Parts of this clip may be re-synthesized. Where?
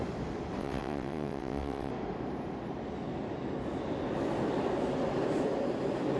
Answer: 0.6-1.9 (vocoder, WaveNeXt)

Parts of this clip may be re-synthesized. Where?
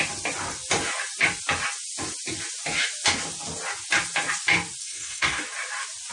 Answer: 4.8-5.4 (codec, SNAC)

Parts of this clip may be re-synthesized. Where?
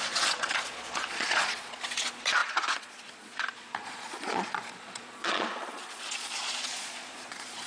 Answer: 0.0-7.7 (vocoder, Vocos)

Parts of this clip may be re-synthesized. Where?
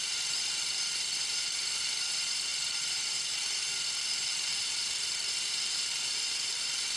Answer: 0.0-4.5 (vocoder, BigVGAN v2); 6.1-7.0